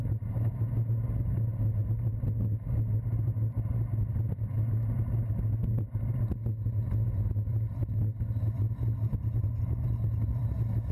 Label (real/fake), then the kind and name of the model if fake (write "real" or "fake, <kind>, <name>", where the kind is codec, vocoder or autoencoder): real